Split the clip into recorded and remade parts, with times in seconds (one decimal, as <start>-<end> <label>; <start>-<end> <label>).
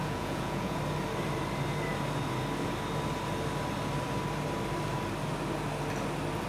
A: 0.0-0.8 remade; 0.8-6.5 recorded